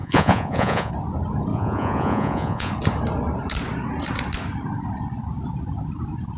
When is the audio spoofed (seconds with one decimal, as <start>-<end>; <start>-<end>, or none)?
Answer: 0.0-0.9; 1.5-2.7